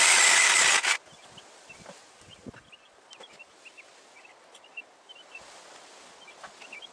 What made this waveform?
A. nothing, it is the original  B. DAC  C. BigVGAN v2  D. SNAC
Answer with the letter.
A